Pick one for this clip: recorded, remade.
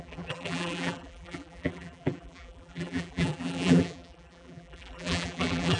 remade